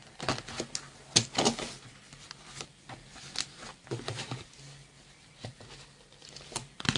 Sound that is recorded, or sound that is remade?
recorded